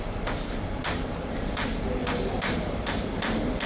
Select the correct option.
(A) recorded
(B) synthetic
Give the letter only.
A